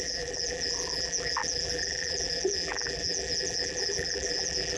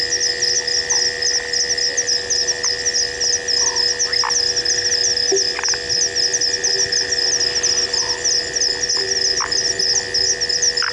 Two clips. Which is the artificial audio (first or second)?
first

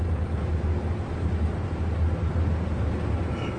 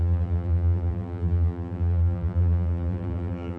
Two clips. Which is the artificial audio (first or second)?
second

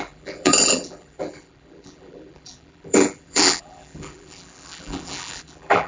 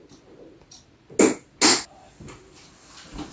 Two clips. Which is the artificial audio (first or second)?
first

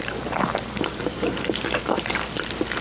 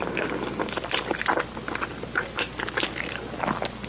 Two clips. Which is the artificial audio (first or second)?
first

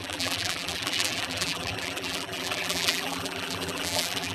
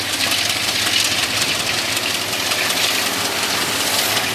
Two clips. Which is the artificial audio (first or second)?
first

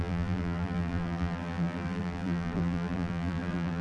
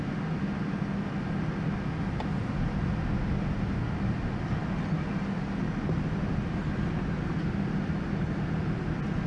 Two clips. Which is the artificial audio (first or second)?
first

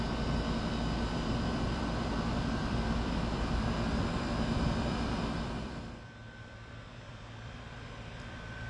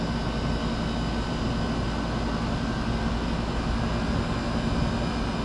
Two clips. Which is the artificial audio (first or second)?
first